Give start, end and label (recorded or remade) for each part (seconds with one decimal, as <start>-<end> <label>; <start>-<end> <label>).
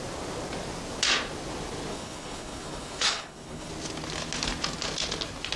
0.0-1.9 recorded; 1.9-3.7 remade; 3.7-5.6 recorded